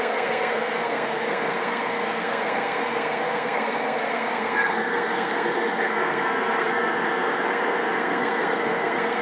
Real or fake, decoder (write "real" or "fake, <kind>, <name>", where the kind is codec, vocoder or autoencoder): fake, codec, SNAC